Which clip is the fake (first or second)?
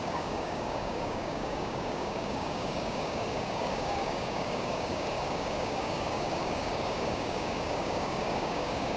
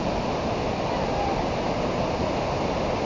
first